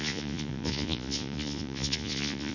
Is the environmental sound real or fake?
fake